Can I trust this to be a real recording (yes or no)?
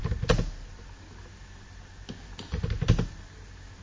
yes